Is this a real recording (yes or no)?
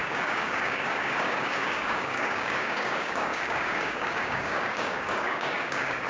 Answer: no